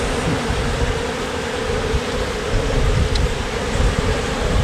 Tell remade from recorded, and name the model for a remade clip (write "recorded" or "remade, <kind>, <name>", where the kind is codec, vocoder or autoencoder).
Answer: remade, vocoder, BigVGAN v2